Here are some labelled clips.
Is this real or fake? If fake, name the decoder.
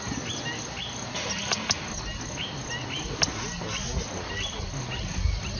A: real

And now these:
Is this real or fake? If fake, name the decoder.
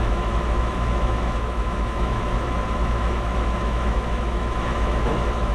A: fake, autoencoder, DAC-VAE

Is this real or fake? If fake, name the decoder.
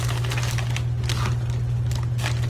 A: real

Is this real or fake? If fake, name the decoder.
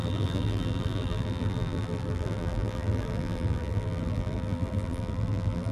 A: fake, vocoder, BigVGAN v2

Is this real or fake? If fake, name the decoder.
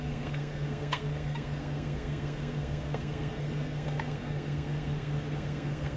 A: fake, codec, SNAC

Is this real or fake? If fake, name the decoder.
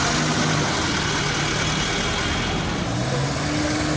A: real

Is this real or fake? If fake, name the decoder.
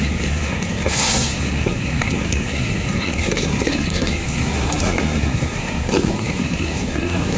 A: fake, codec, SNAC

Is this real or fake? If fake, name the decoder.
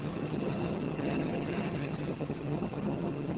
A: fake, vocoder, HiFi-GAN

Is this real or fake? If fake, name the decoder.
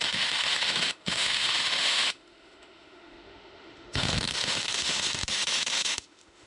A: fake, autoencoder, DAC-VAE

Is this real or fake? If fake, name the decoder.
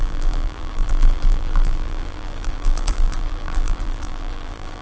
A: fake, vocoder, BigVGAN v2